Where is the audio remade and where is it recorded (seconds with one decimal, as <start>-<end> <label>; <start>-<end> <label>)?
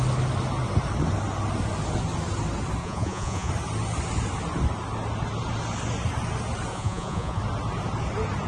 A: 0.0-2.8 recorded; 2.8-3.5 remade; 3.5-6.7 recorded; 6.7-7.4 remade; 7.4-8.5 recorded